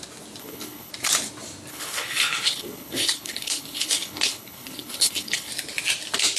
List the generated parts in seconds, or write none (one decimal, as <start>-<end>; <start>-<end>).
0.4-0.9; 1.7-5.5